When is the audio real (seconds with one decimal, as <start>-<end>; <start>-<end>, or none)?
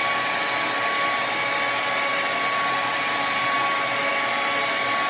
0.0-5.1